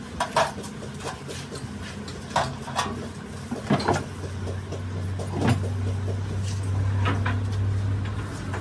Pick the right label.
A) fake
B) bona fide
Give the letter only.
B